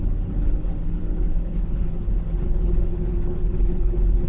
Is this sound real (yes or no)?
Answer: no